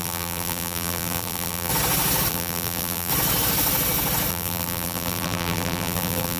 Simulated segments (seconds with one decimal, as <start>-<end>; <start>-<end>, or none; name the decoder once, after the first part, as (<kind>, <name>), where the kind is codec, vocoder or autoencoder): 0.0-1.7 (vocoder, BigVGAN v2); 2.3-3.1; 4.3-6.4